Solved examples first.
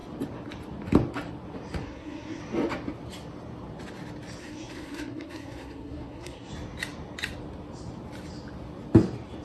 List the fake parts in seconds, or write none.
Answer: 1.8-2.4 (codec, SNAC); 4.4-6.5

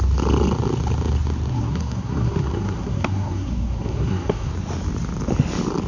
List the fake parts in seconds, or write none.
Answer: 1.5-4.5 (codec, SNAC)

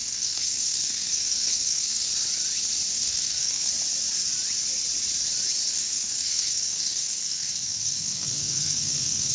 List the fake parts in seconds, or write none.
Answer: 0.0-2.1 (codec, SNAC); 2.9-3.7; 5.7-9.3

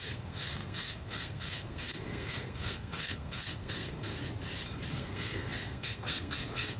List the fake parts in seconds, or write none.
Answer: 0.0-4.1 (codec, SNAC); 4.9-6.8